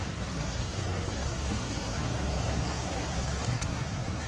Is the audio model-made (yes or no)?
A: yes